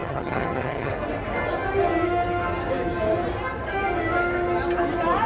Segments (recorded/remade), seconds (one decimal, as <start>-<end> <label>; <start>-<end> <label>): 0.0-0.9 remade; 0.9-5.3 recorded